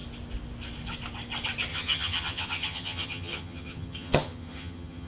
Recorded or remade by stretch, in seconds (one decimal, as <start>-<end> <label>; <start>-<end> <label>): 0.0-1.7 recorded; 1.7-5.1 remade